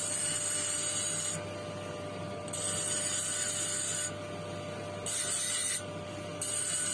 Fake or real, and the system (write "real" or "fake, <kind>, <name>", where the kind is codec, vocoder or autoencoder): real